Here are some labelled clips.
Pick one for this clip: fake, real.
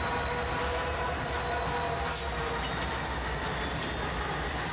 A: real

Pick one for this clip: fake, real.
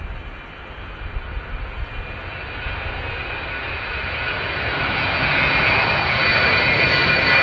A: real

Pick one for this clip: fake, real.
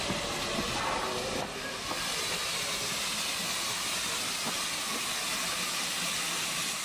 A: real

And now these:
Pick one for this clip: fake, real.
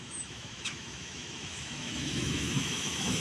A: fake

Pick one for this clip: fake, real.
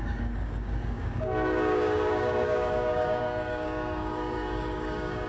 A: fake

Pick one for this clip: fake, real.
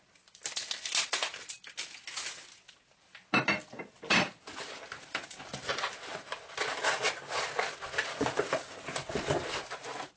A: real